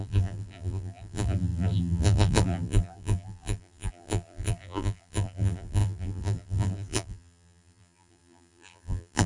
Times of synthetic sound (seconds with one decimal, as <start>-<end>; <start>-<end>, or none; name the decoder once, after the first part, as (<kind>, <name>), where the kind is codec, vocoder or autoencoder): 0.0-9.3 (vocoder, BigVGAN v2)